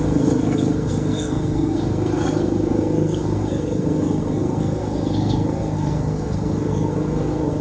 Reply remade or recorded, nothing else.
remade